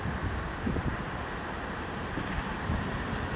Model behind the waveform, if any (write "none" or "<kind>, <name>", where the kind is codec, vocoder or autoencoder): vocoder, BigVGAN v2